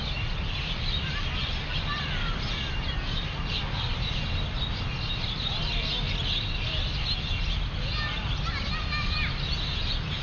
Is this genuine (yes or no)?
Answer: yes